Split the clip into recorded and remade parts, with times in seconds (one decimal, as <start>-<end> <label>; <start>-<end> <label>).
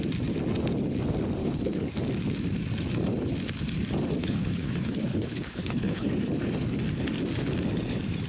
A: 0.0-1.4 recorded; 1.4-1.9 remade; 1.9-4.2 recorded; 4.2-6.1 remade; 6.1-8.3 recorded